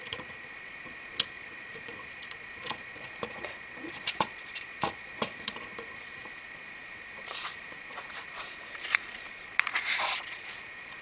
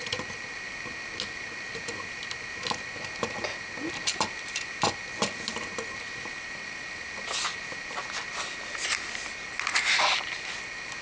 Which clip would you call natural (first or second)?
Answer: second